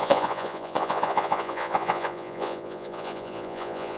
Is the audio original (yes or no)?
no